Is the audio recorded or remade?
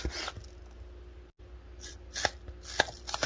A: recorded